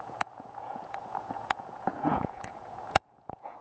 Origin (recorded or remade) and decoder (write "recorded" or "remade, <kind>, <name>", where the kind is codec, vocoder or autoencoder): remade, vocoder, Vocos